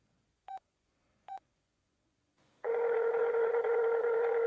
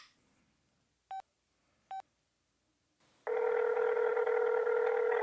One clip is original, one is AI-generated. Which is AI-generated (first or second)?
first